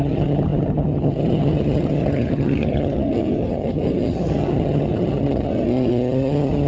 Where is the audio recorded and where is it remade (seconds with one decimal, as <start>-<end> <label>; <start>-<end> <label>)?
0.0-6.7 remade